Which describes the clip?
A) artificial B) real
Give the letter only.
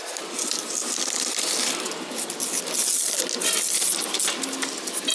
B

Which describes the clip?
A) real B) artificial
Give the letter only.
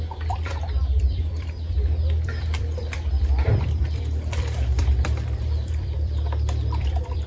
B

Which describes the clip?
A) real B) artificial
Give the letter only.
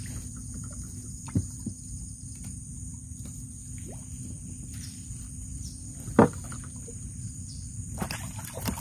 B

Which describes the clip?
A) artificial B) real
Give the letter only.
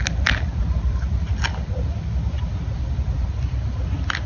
B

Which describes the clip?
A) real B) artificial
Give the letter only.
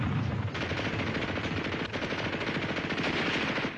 A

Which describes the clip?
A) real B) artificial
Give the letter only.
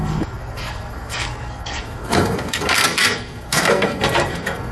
B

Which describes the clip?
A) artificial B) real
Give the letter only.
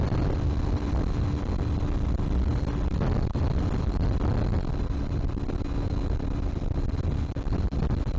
B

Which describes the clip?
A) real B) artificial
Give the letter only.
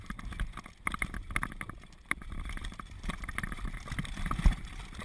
B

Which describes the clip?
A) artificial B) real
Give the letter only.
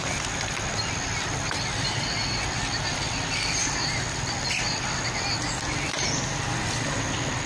B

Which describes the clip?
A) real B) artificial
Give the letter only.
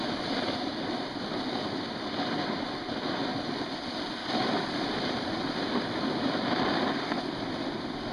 A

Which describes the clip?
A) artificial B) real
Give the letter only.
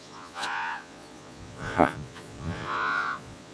A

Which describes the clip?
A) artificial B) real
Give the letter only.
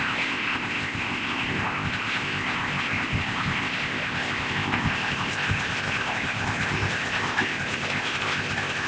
A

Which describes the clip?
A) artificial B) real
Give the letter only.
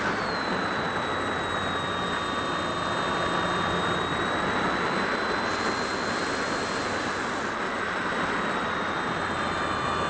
A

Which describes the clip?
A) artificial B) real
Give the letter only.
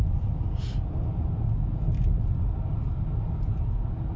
B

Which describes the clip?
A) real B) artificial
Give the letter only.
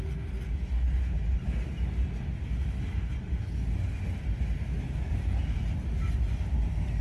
A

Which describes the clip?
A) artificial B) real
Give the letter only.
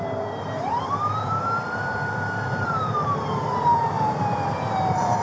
A